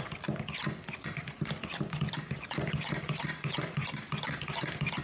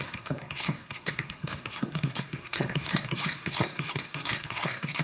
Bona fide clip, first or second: first